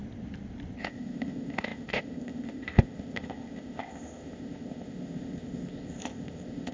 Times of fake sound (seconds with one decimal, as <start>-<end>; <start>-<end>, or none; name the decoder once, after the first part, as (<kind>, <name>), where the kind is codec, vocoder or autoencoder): 0.8-6.7 (codec, ZipCodec)